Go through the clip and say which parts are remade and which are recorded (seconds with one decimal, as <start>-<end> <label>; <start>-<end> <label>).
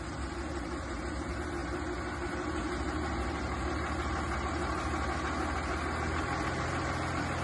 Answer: 0.0-7.4 recorded